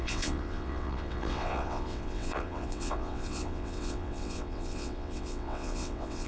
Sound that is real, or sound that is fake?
fake